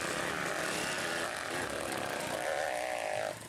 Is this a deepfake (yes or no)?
no